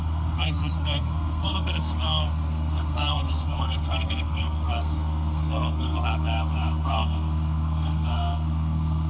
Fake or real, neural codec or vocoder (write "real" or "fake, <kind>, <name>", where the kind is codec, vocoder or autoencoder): fake, codec, SNAC